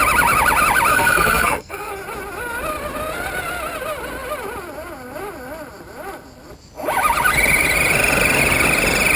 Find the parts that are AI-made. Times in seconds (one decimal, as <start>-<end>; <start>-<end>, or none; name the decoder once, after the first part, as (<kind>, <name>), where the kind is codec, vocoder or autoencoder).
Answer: 0.9-1.9 (codec, SNAC)